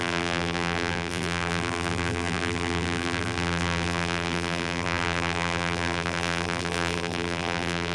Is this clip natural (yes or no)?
no